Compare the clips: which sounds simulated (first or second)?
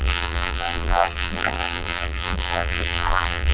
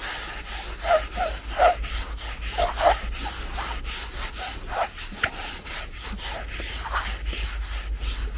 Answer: first